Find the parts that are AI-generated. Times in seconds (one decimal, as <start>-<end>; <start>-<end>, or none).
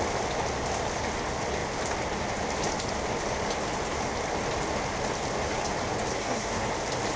6.2-6.7